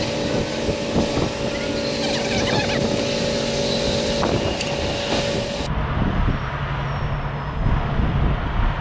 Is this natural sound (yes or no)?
yes